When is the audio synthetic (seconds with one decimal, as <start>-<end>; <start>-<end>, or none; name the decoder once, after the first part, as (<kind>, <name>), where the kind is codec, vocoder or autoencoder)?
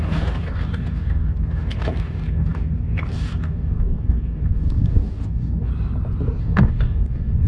0.0-5.7 (codec, DAC); 6.4-7.5